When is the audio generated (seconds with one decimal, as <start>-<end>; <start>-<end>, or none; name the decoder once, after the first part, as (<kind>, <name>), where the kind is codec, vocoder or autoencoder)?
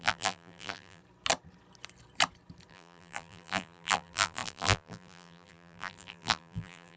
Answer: 0.0-1.0 (vocoder, BigVGAN v2); 2.7-7.0